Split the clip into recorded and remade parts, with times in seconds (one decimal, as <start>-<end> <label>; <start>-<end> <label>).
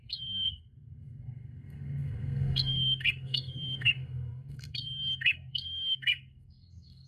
0.0-7.1 remade